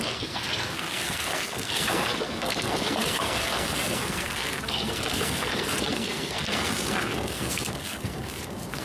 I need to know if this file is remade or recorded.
remade